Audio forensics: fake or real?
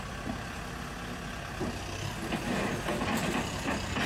real